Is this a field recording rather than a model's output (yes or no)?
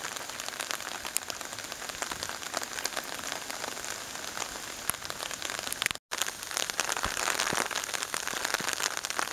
yes